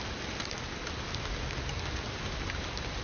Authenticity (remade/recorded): recorded